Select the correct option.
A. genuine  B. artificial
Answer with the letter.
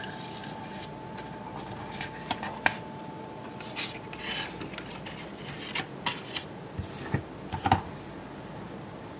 A